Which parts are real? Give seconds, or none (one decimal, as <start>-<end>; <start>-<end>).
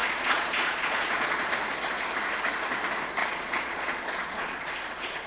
1.5-3.2